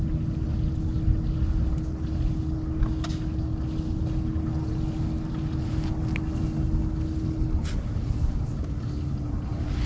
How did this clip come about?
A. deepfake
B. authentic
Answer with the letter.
B